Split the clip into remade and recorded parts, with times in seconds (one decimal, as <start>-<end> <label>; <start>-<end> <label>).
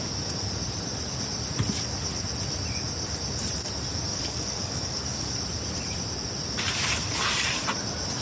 0.0-4.1 recorded; 4.1-5.4 remade; 5.4-8.2 recorded